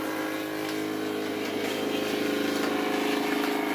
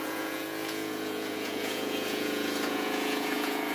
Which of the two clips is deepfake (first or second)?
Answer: second